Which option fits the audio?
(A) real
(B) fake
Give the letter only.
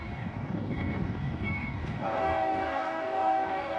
B